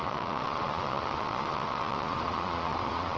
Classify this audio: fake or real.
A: fake